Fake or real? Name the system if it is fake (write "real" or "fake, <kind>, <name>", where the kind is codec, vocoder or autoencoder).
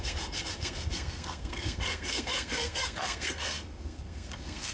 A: fake, codec, SNAC